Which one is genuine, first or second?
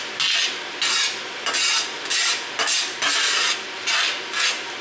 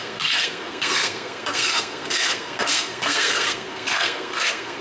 first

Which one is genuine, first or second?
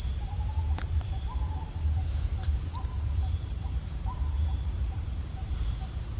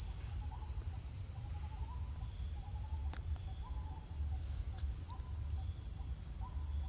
second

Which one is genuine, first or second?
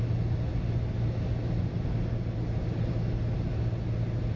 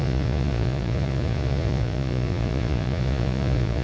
first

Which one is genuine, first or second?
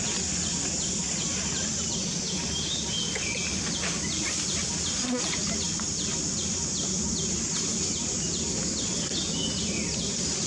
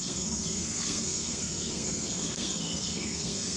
first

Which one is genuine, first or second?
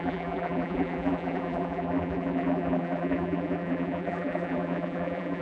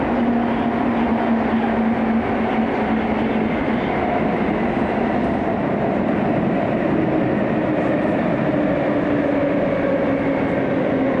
second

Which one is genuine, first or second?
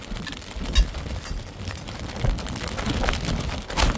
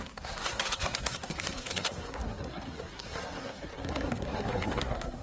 first